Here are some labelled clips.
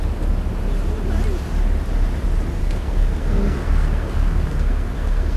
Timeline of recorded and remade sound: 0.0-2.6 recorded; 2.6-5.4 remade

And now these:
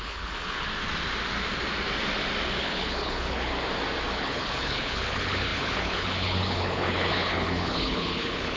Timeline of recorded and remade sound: 0.0-0.7 remade; 0.7-2.6 recorded; 2.6-3.5 remade; 3.5-4.1 recorded; 4.1-8.6 remade

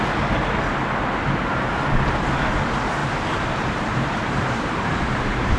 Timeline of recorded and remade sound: 0.0-3.0 recorded; 3.0-5.6 remade